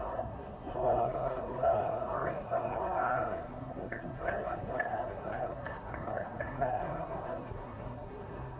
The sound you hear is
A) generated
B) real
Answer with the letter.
A